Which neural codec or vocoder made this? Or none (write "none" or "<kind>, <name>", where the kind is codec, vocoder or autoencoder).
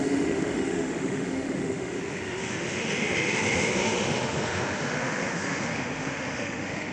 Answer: autoencoder, DAC-VAE